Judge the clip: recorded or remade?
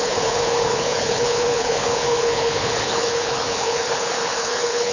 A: remade